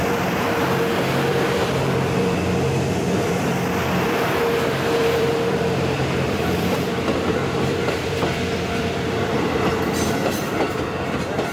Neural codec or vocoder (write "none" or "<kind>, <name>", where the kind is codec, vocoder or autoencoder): vocoder, BigVGAN v2